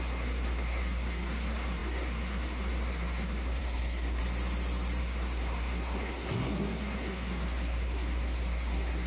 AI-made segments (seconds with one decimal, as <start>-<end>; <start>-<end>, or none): 0.0-4.2; 5.0-9.1